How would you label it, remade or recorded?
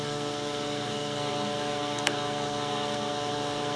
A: remade